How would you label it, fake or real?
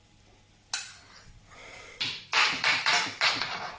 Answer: real